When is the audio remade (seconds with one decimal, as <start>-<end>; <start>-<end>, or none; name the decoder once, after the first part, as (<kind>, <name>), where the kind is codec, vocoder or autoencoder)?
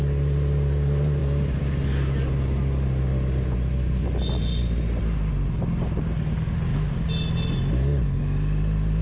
none